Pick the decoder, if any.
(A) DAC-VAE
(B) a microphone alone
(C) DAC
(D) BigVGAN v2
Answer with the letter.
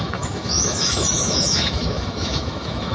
A